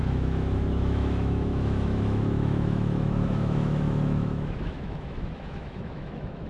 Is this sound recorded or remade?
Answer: remade